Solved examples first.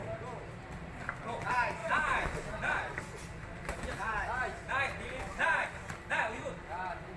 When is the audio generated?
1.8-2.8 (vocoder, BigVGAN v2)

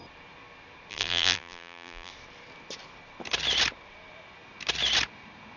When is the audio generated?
0.9-2.1 (vocoder, BigVGAN v2)

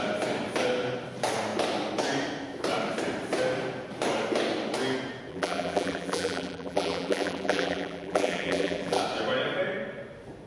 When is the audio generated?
5.3-9.0 (vocoder, BigVGAN v2)